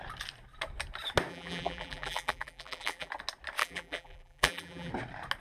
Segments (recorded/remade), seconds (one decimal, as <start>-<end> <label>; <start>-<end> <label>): 0.0-1.3 recorded; 1.3-3.1 remade; 3.1-3.6 recorded; 3.6-4.9 remade; 4.9-5.4 recorded